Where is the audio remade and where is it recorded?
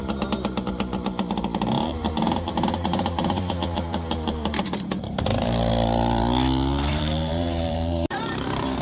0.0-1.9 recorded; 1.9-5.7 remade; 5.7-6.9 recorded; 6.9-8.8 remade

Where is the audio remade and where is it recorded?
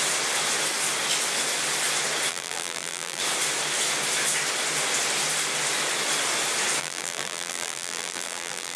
0.0-2.3 recorded; 2.3-3.2 remade; 3.2-6.8 recorded; 6.8-8.8 remade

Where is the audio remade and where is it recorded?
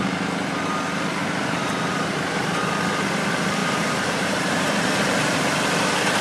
0.0-1.2 recorded; 1.2-2.6 remade; 2.6-3.6 recorded; 3.6-4.7 remade; 4.7-6.2 recorded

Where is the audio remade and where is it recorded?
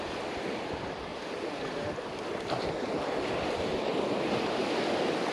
0.0-1.1 remade; 1.1-3.1 recorded; 3.1-3.9 remade; 3.9-5.3 recorded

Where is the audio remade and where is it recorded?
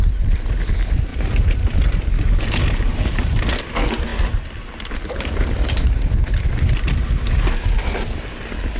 0.0-1.1 recorded; 1.1-3.5 remade; 3.5-8.8 recorded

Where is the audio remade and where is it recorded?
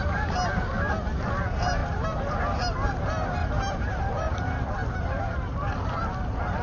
0.0-1.8 recorded; 1.8-2.4 remade; 2.4-3.4 recorded; 3.4-4.3 remade; 4.3-5.5 recorded; 5.5-6.0 remade; 6.0-6.6 recorded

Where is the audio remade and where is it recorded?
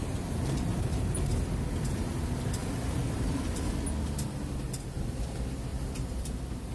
0.0-1.6 remade; 1.6-2.6 recorded; 2.6-3.7 remade; 3.7-5.7 recorded; 5.7-6.3 remade; 6.3-6.7 recorded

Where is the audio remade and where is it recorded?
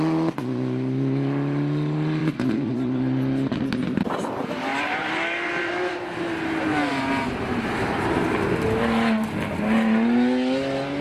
0.0-2.2 recorded; 2.2-2.7 remade; 2.7-4.7 recorded; 4.7-6.2 remade; 6.2-11.0 recorded